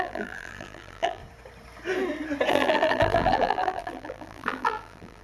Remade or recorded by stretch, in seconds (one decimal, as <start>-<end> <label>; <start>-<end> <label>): 0.0-1.2 remade; 1.2-2.5 recorded; 2.5-5.2 remade